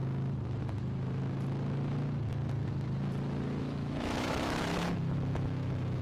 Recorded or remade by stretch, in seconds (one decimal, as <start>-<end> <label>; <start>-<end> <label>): 0.0-3.6 recorded; 3.6-6.0 remade